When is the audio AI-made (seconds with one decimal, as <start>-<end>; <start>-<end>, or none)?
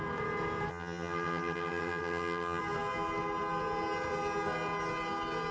0.7-2.6